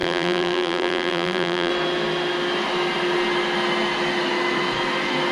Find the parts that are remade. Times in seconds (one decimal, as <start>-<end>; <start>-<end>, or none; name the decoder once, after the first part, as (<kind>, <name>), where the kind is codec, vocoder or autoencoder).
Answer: 0.0-1.7 (vocoder, BigVGAN v2)